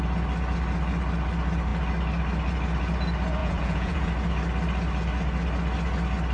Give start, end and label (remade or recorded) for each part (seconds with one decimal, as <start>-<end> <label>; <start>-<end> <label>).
0.0-3.4 recorded; 3.4-4.1 remade; 4.1-6.3 recorded